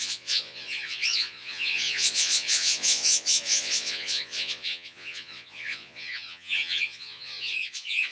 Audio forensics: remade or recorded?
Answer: remade